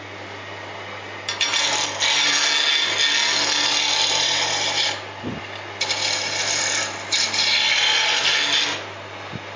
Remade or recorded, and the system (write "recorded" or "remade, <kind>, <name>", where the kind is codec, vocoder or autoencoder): recorded